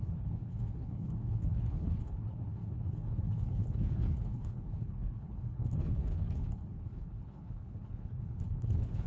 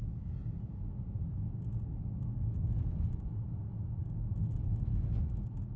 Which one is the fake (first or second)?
first